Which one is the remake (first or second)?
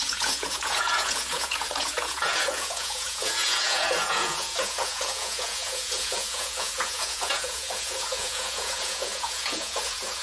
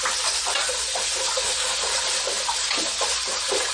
first